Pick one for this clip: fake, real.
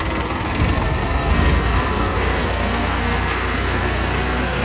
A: fake